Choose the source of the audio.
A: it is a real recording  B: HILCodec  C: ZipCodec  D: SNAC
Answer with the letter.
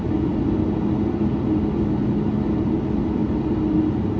A